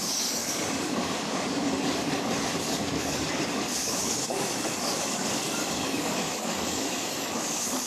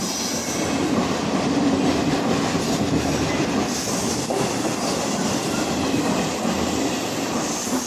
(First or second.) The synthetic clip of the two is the first